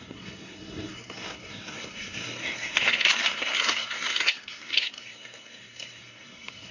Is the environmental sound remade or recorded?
remade